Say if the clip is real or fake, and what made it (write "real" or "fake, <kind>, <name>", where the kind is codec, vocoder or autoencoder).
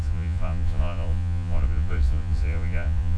fake, vocoder, Vocos